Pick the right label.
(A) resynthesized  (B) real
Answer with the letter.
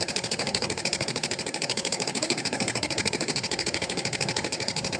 A